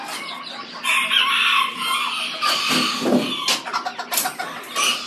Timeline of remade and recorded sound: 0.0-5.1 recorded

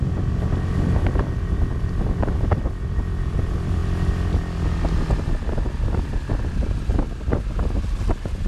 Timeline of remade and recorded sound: 0.0-8.5 recorded

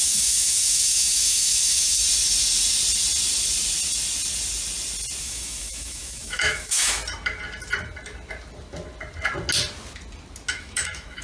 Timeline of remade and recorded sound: 0.0-2.0 remade; 2.0-5.2 recorded; 5.2-7.0 remade; 7.0-10.5 recorded; 10.5-11.2 remade

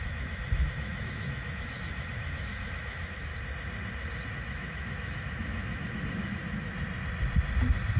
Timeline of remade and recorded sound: 0.0-3.3 remade; 3.3-4.3 recorded; 4.3-6.7 remade; 6.7-8.0 recorded

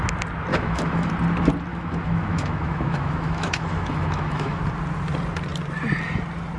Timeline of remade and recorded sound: 0.0-0.5 recorded; 0.5-1.1 remade; 1.1-1.7 recorded; 1.7-4.6 remade; 4.6-6.6 recorded

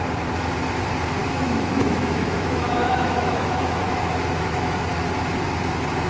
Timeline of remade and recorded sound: 0.0-1.2 recorded; 1.2-4.9 remade; 4.9-6.1 recorded

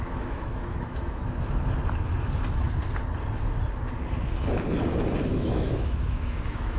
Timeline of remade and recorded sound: 0.0-1.2 remade; 1.2-5.3 recorded; 5.3-6.8 remade

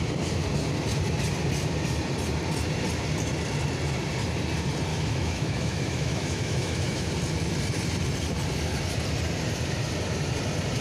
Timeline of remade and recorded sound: 0.0-4.9 recorded; 4.9-7.1 remade; 7.1-10.8 recorded